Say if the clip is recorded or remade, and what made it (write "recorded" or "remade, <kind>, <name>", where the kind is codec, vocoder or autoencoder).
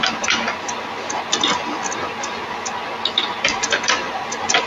recorded